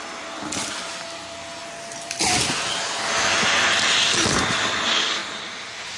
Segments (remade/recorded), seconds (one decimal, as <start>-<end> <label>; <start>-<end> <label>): 0.0-6.0 recorded